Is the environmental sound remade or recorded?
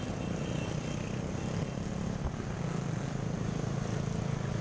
recorded